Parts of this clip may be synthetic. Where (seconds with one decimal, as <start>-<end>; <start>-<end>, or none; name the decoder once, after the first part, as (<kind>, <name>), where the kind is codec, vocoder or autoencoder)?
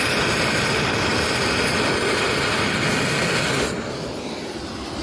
none